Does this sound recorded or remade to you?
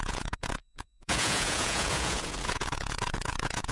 remade